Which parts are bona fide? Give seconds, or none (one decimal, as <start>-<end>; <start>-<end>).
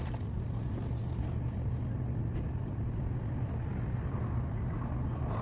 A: 0.0-5.4